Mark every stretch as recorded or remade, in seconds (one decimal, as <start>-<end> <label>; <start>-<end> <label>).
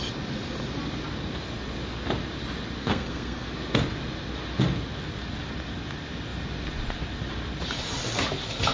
0.0-2.8 recorded; 2.8-3.5 remade; 3.5-8.7 recorded